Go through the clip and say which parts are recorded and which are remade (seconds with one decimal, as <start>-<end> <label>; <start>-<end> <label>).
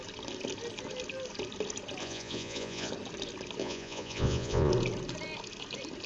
0.0-2.0 recorded; 2.0-2.9 remade; 2.9-3.6 recorded; 3.6-4.7 remade; 4.7-6.1 recorded